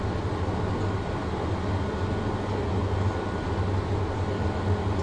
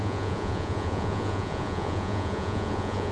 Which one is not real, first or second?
second